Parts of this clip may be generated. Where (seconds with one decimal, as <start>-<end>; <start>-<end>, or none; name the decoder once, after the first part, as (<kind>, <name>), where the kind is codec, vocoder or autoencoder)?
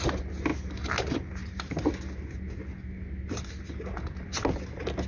none